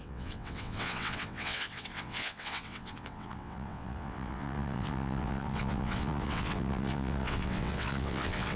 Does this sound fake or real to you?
fake